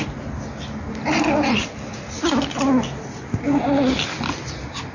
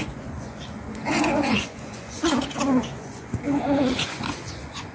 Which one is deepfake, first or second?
second